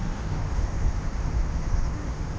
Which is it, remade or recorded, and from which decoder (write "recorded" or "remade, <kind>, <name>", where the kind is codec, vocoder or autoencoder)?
remade, autoencoder, DAC-VAE